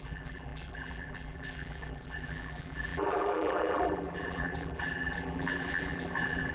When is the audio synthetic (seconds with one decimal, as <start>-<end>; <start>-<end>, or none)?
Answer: 0.0-6.5